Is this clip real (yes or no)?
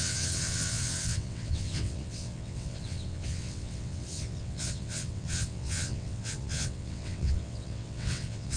no